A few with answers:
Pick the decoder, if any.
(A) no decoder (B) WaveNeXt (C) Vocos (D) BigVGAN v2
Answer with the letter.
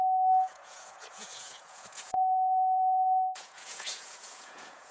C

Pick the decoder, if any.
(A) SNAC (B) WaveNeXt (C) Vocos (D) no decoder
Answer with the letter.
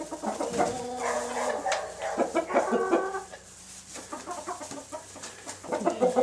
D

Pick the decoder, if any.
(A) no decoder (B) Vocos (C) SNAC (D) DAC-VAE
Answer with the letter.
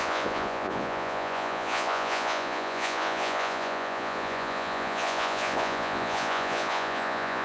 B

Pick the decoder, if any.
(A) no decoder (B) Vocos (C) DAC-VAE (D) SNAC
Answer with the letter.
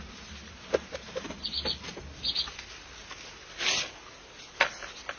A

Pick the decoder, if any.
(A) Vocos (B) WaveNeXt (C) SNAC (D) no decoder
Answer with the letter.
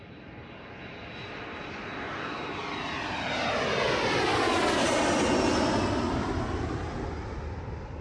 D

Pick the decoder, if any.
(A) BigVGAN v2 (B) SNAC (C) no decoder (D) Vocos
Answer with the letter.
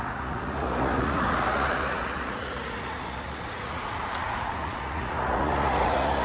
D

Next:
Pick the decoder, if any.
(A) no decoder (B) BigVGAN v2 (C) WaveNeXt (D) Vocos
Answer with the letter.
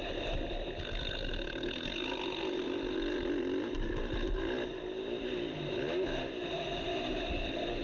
A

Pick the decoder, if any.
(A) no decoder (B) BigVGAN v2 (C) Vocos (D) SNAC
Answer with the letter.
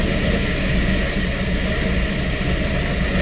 A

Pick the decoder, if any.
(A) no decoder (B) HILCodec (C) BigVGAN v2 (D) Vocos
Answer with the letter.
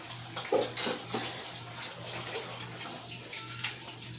A